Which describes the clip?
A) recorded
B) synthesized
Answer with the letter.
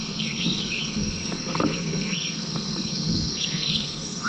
B